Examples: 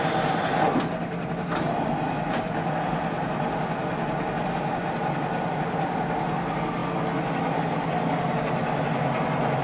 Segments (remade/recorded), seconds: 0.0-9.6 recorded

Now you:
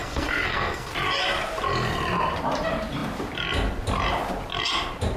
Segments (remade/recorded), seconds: 0.0-0.9 remade; 0.9-5.2 recorded